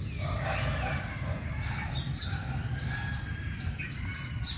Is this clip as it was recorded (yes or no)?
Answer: yes